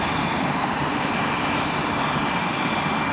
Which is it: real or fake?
real